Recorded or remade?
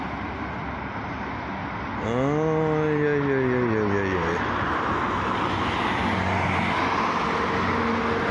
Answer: recorded